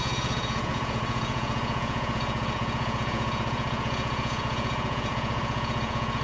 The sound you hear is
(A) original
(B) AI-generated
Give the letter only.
B